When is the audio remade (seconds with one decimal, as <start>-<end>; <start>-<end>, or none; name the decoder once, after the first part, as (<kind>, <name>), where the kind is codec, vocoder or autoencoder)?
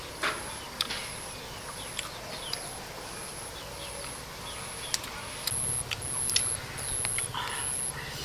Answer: none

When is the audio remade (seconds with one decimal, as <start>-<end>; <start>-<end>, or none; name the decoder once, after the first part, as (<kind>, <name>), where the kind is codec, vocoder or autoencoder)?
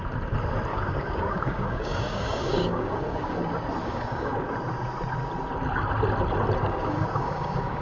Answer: 0.7-3.4 (codec, DAC); 3.8-4.5; 6.6-7.8